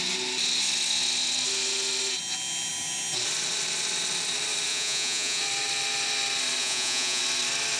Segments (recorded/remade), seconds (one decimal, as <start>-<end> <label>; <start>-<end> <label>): 0.0-4.7 recorded; 4.7-5.4 remade; 5.4-6.6 recorded; 6.6-7.2 remade; 7.2-7.8 recorded